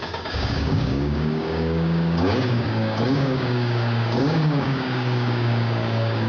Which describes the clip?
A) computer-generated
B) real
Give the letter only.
A